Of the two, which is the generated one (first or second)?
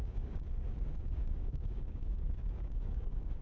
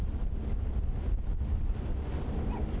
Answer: first